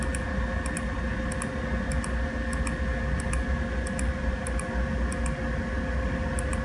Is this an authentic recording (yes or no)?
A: yes